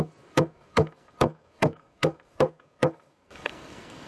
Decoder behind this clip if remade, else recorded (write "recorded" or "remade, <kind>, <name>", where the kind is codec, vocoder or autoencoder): remade, codec, SNAC